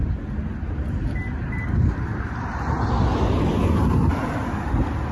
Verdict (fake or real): real